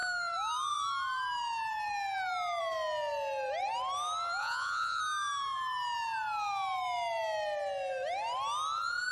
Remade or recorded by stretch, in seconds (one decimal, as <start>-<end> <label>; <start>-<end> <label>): 0.0-4.4 recorded; 4.4-5.0 remade; 5.0-9.1 recorded